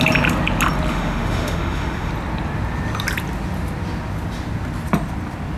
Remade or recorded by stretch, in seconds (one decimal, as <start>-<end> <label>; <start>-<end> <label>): 0.0-0.9 recorded; 0.9-2.1 remade; 2.1-5.6 recorded

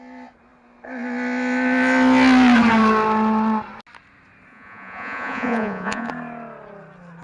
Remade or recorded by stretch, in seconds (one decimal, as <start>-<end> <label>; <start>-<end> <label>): 0.0-4.5 recorded; 4.5-6.1 remade; 6.1-7.2 recorded

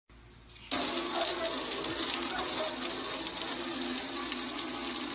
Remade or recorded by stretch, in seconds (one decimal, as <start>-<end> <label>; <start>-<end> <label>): 0.0-5.1 recorded

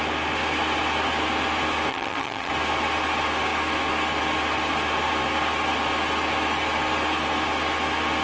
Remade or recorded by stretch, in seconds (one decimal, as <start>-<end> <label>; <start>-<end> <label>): 0.0-1.9 recorded; 1.9-2.5 remade; 2.5-8.2 recorded

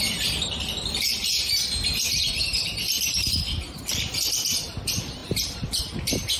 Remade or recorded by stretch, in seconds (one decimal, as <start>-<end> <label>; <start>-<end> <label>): 0.0-6.4 recorded

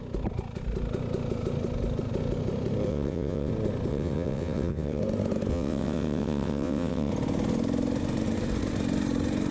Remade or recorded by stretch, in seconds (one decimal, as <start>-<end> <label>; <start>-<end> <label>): 0.0-2.9 recorded; 2.9-3.5 remade; 3.5-3.9 recorded; 3.9-5.0 remade; 5.0-5.5 recorded; 5.5-7.1 remade; 7.1-9.5 recorded